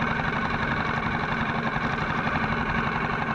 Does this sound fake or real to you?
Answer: real